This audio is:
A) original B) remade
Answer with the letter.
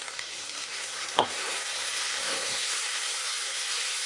B